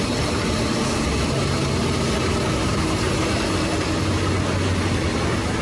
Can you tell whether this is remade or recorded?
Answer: recorded